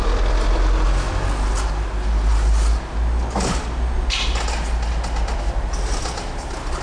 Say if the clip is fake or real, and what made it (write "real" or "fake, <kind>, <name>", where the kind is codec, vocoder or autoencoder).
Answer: real